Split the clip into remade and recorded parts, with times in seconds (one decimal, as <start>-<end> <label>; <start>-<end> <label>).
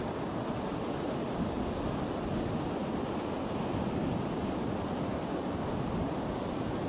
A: 0.0-6.9 recorded